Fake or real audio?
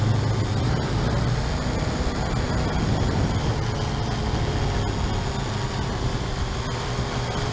real